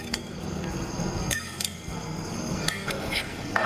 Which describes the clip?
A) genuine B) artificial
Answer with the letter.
B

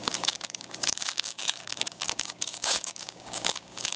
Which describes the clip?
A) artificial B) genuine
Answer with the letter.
A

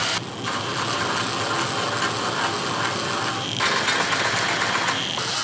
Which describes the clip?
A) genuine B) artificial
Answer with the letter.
A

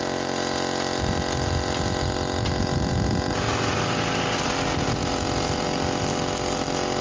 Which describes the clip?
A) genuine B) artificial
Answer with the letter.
A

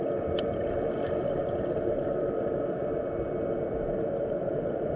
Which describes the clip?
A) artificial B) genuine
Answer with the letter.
B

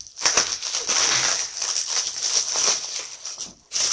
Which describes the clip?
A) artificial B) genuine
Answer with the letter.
B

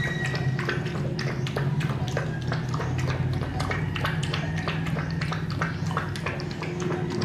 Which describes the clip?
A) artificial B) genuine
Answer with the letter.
B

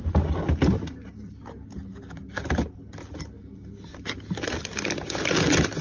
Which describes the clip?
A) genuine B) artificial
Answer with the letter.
A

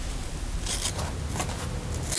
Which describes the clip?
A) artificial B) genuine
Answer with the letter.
B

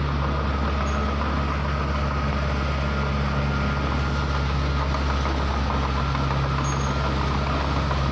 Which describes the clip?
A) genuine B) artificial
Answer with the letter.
A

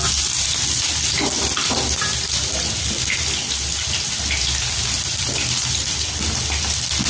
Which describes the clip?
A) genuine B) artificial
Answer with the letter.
A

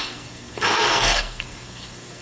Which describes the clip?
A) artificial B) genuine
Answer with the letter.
A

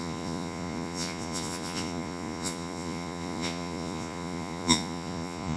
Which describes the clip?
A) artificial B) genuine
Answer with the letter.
A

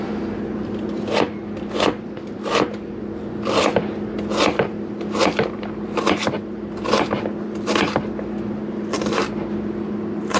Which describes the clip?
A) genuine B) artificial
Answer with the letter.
A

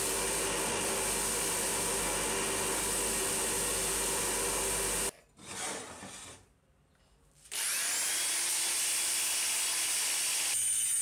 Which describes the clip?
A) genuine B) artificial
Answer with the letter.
A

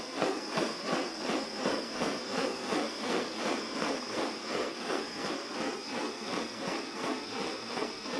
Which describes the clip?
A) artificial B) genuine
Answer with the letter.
A